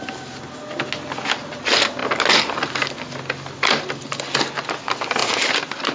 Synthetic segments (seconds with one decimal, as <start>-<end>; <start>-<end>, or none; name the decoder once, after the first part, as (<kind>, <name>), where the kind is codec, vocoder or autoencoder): none